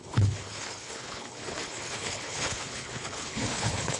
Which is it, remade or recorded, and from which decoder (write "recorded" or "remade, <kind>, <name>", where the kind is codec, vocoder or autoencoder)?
remade, codec, HILCodec